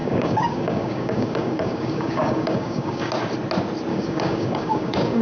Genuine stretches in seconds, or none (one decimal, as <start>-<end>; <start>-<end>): 3.1-3.9